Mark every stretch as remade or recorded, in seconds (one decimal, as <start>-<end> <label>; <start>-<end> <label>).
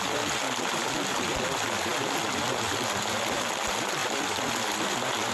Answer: 0.0-5.3 recorded